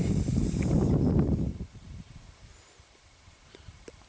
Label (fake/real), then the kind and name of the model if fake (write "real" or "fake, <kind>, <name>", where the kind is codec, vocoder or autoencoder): fake, vocoder, BigVGAN v2